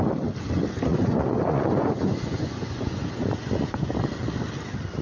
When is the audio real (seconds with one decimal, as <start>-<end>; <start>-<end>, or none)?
0.0-0.9; 3.9-5.0